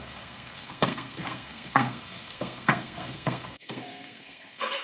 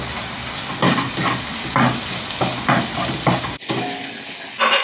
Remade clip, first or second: first